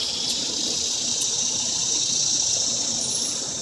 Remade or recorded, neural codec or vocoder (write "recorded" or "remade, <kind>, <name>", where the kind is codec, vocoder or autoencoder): remade, vocoder, BigVGAN v2